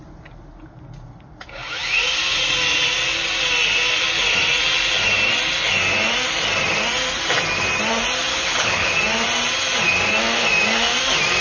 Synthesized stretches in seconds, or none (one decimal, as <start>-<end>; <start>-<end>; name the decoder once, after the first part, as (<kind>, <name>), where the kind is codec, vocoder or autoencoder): 8.3-8.9 (codec, HILCodec)